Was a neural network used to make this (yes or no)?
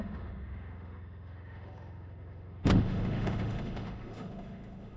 yes